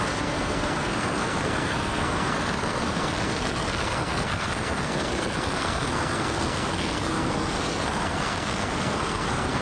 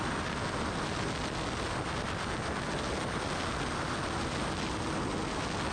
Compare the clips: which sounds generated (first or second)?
first